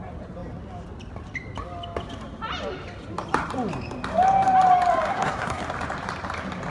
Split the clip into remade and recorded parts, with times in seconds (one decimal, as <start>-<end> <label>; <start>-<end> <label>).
0.0-5.1 recorded; 5.1-5.6 remade; 5.6-6.7 recorded